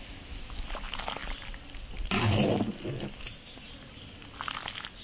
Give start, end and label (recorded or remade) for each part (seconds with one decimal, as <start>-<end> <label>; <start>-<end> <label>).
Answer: 0.0-5.0 recorded